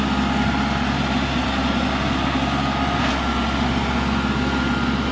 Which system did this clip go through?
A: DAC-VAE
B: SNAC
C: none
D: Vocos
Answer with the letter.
C